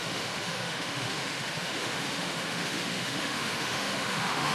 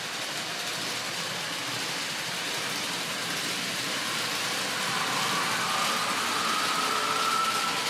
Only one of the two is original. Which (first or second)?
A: second